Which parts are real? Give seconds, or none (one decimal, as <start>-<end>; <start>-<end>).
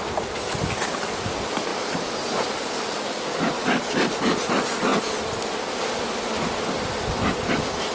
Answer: 0.0-7.9